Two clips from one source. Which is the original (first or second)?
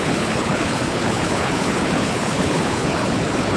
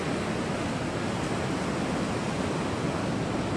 second